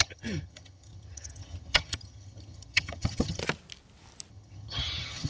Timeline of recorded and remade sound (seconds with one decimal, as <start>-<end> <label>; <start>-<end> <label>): 0.0-3.4 remade; 3.4-4.3 recorded; 4.3-5.3 remade